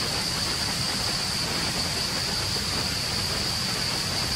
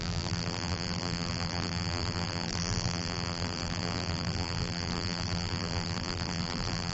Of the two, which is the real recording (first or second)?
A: first